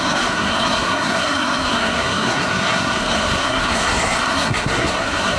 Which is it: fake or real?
fake